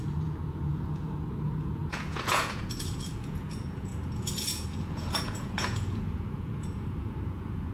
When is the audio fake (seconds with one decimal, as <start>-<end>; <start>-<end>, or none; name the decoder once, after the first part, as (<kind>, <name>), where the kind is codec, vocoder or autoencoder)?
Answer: 0.0-7.7 (vocoder, Vocos)